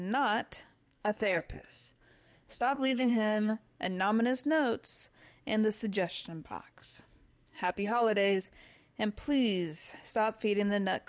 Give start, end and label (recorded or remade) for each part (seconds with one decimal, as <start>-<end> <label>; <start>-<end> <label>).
0.0-0.7 recorded; 0.7-3.6 remade; 3.6-6.8 recorded; 6.8-8.4 remade; 8.4-11.1 recorded